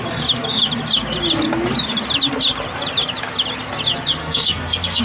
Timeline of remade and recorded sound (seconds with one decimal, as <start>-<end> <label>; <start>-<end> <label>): 0.0-4.2 recorded; 4.2-5.0 remade